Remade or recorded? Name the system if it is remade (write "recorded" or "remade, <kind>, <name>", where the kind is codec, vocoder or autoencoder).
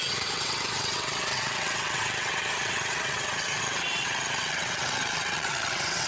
remade, vocoder, WaveNeXt